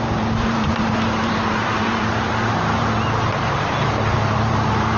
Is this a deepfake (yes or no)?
yes